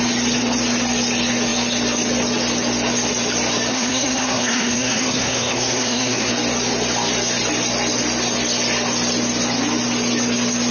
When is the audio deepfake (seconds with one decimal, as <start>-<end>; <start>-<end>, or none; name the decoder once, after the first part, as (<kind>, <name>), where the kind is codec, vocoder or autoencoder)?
3.7-6.3 (codec, SNAC)